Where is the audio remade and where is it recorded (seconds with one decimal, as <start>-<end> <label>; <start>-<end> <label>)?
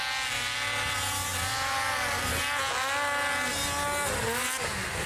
0.0-1.3 recorded; 1.3-2.3 remade; 2.3-5.1 recorded